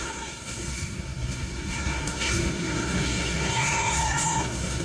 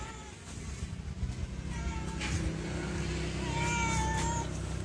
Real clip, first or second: second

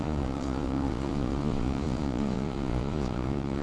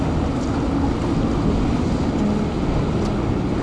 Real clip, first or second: second